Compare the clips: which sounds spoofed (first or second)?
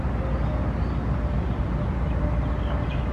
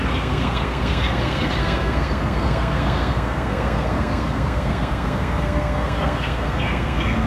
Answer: second